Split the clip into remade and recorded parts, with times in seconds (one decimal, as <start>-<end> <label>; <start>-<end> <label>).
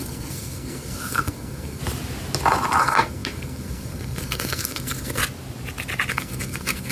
0.0-1.8 remade; 1.8-2.8 recorded; 2.8-5.2 remade; 5.2-6.1 recorded; 6.1-6.9 remade